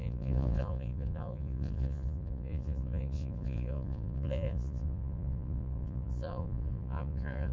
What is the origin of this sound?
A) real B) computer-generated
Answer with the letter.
B